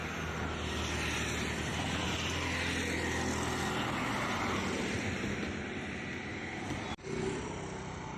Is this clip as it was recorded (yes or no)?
yes